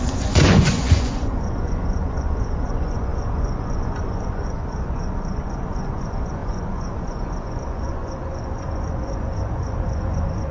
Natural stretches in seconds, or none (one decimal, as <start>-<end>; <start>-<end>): none